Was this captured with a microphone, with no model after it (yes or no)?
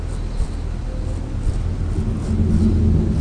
yes